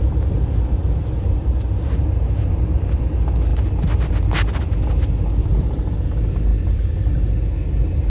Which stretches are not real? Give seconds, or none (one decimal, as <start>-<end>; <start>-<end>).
3.5-4.1; 5.4-5.9; 6.5-7.3